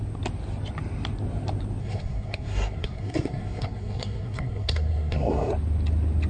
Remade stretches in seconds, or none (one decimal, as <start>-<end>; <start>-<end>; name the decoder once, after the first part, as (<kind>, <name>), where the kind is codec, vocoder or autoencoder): 1.8-5.5 (codec, SNAC)